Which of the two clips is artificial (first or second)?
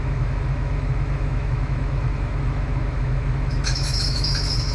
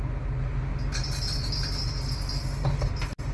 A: first